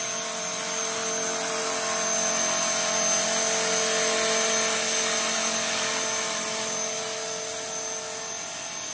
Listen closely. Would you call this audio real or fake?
real